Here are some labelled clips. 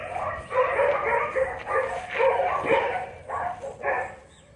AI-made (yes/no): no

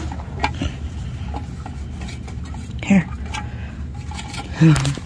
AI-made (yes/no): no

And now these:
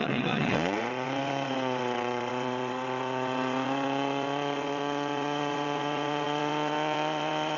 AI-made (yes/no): yes